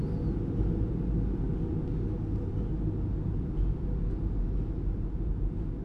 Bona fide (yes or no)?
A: yes